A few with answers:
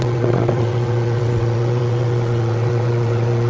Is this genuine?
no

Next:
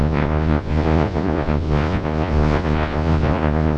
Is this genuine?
no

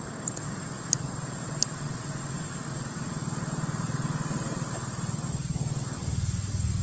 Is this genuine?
yes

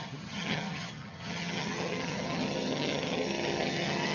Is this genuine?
no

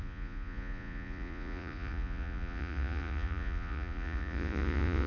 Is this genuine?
no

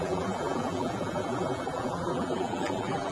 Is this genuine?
no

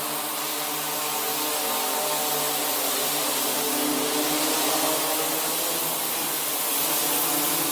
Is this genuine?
yes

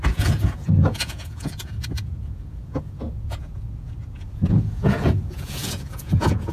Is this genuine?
no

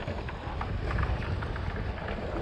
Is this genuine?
yes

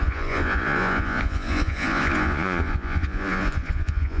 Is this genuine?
no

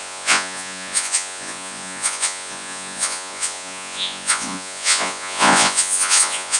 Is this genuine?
no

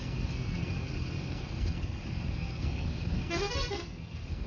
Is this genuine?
no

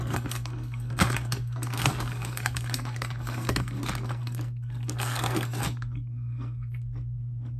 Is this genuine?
no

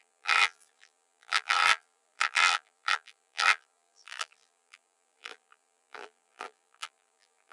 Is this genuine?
no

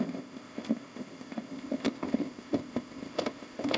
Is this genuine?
no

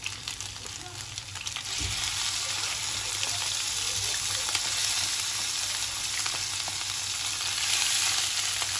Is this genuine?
yes